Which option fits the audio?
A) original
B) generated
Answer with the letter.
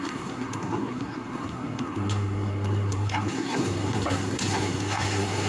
B